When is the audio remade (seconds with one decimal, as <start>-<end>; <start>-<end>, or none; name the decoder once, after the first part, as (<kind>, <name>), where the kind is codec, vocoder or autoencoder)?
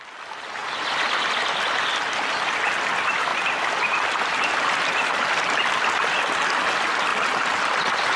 0.6-2.6 (vocoder, BigVGAN v2); 3.3-6.2